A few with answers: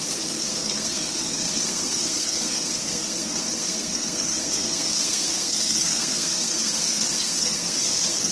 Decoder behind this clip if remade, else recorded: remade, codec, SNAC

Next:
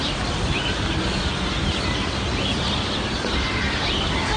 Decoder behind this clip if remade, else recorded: recorded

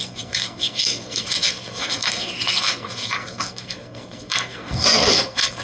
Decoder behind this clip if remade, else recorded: remade, codec, SNAC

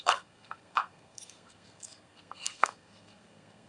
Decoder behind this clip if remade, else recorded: remade, codec, SNAC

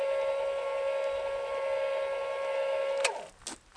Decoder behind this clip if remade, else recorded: recorded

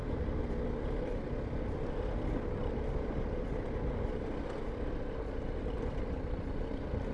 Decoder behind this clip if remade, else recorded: recorded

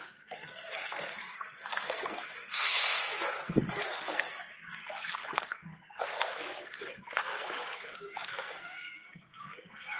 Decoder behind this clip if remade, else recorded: remade, codec, SNAC